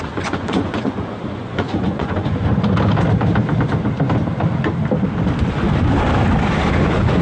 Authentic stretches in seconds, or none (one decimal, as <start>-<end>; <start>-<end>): 2.5-6.8